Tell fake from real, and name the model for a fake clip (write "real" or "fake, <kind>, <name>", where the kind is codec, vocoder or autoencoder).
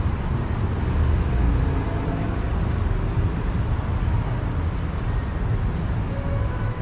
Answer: real